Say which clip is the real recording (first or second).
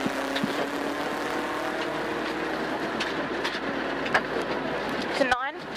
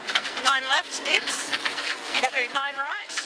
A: first